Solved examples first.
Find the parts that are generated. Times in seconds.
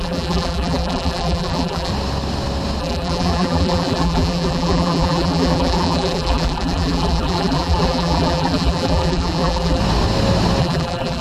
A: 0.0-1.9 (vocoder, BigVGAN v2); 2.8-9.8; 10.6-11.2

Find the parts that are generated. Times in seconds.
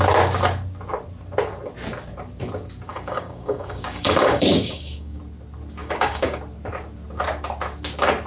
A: 2.9-5.2 (codec, DAC); 5.8-6.4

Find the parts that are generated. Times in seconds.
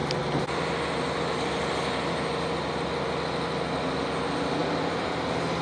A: none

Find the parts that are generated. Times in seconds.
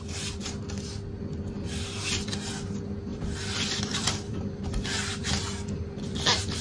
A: 3.1-5.8 (vocoder, BigVGAN v2)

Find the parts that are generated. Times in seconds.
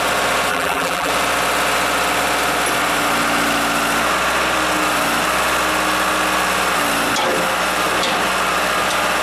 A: 0.5-1.1 (vocoder, BigVGAN v2)